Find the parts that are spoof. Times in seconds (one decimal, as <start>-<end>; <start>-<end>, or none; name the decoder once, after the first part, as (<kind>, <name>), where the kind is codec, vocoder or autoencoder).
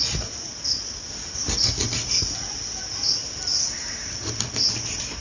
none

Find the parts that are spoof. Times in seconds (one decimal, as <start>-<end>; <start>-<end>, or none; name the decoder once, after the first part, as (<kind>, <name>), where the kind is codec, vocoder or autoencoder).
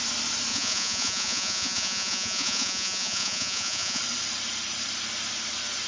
0.5-4.0 (vocoder, Vocos)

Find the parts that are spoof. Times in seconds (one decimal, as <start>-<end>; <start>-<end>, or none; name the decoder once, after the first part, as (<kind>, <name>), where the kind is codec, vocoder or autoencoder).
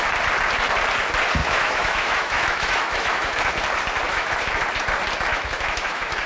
1.4-3.5 (autoencoder, DAC-VAE); 4.1-4.6; 5.3-6.3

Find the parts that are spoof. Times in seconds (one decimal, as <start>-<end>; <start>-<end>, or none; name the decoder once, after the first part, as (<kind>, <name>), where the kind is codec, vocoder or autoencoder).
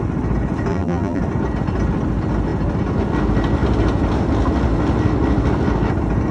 0.7-1.2 (vocoder, BigVGAN v2)